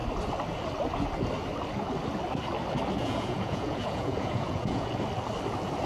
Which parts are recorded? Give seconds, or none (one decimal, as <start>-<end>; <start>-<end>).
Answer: 0.0-3.0; 5.0-5.9